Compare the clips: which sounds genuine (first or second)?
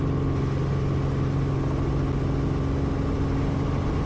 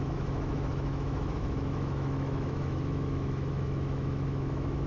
first